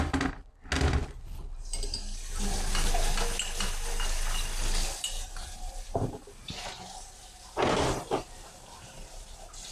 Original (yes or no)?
yes